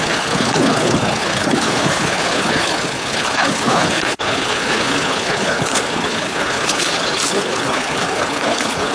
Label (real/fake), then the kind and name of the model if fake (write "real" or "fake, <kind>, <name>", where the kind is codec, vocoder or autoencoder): fake, codec, HILCodec